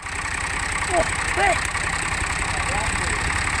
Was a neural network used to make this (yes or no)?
no